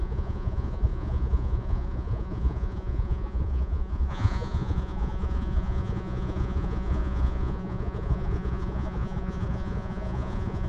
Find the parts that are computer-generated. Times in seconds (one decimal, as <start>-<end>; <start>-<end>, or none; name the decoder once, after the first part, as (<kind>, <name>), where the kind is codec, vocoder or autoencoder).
0.0-10.7 (vocoder, Vocos)

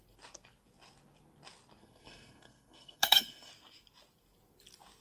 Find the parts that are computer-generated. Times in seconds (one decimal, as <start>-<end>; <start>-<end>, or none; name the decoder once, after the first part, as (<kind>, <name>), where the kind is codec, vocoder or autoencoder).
1.8-3.5 (codec, SNAC)

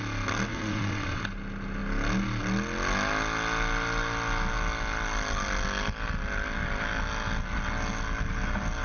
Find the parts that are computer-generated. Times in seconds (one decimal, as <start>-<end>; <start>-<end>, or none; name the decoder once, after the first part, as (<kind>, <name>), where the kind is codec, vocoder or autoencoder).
0.5-1.2 (vocoder, WaveNeXt)

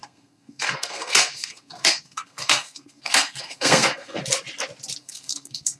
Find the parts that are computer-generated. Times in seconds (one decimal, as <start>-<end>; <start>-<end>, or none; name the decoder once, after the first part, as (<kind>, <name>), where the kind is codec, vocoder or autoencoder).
0.0-4.2 (codec, SNAC); 5.0-5.8

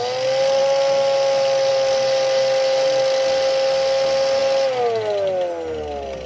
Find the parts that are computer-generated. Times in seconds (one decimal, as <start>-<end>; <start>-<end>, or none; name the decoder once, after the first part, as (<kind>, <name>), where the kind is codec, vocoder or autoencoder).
none

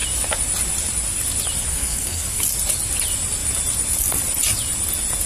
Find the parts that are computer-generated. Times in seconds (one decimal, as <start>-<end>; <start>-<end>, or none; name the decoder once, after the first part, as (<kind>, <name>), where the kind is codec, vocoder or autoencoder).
1.7-2.4 (codec, SNAC)

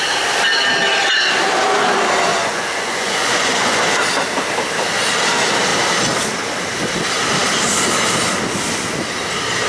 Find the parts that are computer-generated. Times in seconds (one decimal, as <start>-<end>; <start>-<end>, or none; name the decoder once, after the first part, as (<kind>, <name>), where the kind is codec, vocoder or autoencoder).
2.3-3.8 (vocoder, Vocos)